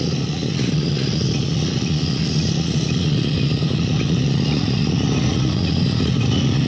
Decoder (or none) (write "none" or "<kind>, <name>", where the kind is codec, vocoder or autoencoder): vocoder, Vocos